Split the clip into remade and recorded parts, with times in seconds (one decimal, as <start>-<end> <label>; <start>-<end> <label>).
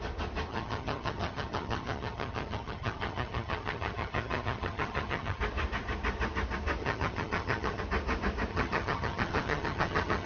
0.0-0.5 recorded; 0.5-5.4 remade; 5.4-6.8 recorded; 6.8-7.8 remade; 7.8-8.5 recorded; 8.5-10.3 remade